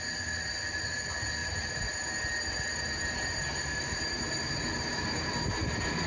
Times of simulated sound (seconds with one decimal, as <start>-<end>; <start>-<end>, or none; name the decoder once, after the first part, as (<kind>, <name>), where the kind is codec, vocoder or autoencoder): 1.4-1.9 (vocoder, BigVGAN v2); 2.7-5.3